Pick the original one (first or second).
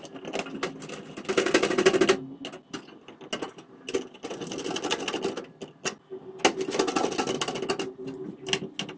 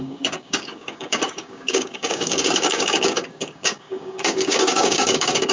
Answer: first